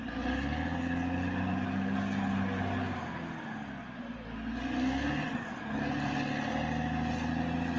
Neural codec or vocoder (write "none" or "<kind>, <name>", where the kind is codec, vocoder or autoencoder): none